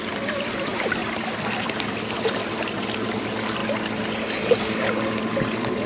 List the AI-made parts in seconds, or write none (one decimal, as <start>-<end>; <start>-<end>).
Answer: none